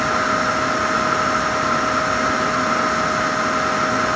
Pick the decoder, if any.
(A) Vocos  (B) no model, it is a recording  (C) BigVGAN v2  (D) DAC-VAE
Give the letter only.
B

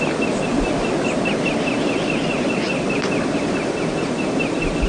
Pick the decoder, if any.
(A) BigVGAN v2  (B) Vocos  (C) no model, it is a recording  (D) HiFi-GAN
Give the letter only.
C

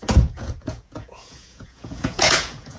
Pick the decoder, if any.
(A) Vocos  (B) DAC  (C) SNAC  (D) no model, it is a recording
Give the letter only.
A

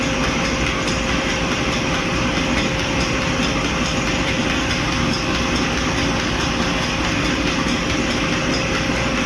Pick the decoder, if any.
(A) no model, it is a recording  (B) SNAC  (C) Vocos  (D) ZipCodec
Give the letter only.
A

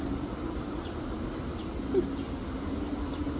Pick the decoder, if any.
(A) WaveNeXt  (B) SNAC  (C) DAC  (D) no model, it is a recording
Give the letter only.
D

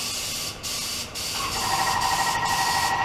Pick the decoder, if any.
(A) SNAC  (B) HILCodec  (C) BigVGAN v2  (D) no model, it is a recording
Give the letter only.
D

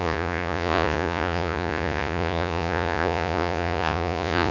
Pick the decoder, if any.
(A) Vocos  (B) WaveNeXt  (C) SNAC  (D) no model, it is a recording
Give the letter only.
A